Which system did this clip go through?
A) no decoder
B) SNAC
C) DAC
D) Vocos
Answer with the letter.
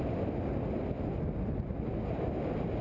A